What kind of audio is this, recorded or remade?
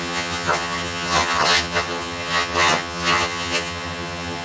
remade